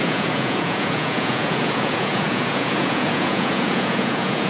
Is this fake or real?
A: fake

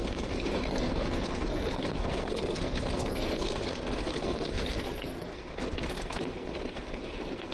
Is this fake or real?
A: fake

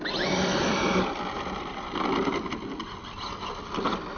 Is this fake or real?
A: real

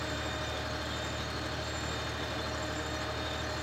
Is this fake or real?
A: real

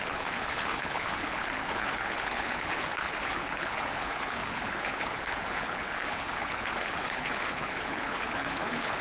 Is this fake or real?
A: fake